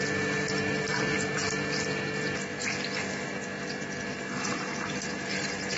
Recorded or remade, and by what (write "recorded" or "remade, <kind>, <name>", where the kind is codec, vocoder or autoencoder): recorded